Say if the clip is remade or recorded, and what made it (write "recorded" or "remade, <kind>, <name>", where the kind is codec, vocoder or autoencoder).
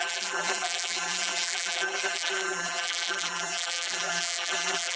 remade, vocoder, BigVGAN v2